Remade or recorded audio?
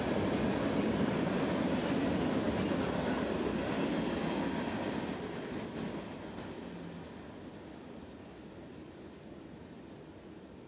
recorded